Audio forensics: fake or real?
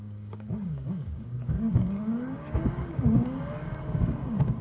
fake